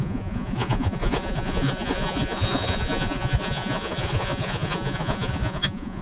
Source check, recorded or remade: remade